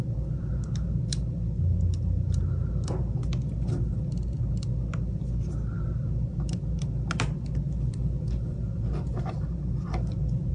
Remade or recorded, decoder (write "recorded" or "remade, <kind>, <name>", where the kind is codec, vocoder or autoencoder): recorded